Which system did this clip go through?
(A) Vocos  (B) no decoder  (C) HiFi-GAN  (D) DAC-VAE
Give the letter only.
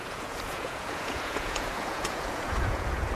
A